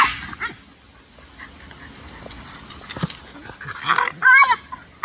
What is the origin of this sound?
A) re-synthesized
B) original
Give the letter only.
B